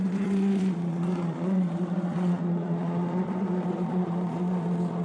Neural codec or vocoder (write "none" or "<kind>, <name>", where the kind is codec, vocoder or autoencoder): vocoder, Vocos